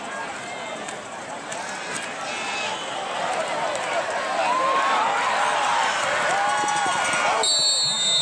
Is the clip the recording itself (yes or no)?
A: yes